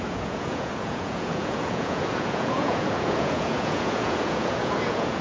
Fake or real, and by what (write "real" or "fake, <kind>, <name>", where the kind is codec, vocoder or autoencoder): fake, vocoder, Vocos